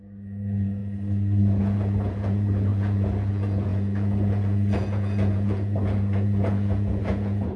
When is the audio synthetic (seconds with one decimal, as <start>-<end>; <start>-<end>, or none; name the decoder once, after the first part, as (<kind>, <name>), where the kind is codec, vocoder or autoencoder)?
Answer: 0.0-0.8 (vocoder, Vocos); 1.6-7.6